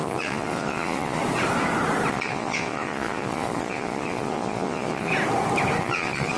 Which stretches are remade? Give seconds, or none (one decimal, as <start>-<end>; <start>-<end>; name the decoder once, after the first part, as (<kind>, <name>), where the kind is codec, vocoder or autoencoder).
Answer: 0.0-1.2 (vocoder, Vocos); 2.1-5.1; 5.8-6.4